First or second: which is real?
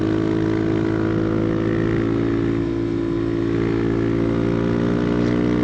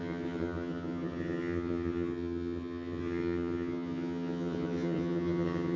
first